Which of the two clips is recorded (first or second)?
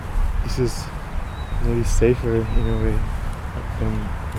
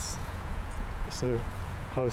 first